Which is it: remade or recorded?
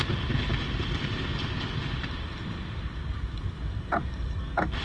recorded